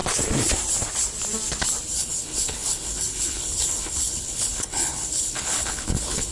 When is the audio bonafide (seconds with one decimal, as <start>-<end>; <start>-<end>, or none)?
0.0-1.9